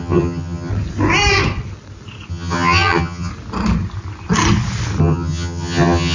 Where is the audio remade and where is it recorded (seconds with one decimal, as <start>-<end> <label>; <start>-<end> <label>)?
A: 0.0-0.7 remade; 0.7-2.3 recorded; 2.3-3.3 remade; 3.3-5.0 recorded; 5.0-6.1 remade